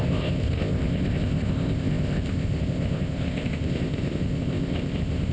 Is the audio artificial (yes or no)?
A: yes